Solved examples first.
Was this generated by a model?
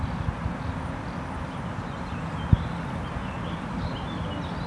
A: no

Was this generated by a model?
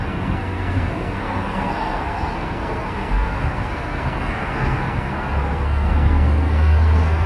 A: yes